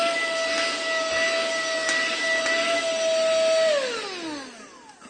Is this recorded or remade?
recorded